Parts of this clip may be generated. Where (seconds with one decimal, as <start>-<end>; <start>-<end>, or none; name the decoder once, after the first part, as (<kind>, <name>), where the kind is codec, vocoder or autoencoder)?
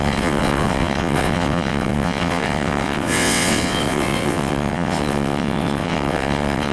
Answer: 0.0-6.7 (vocoder, WaveNeXt)